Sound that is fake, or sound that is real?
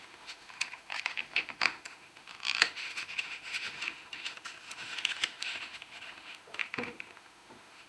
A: fake